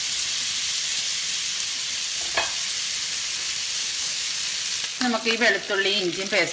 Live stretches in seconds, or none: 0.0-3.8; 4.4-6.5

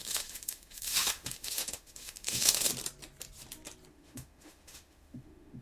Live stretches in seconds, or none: 2.7-3.9

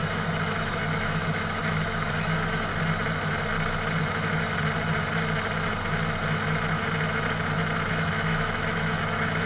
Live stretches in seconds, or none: 2.7-7.9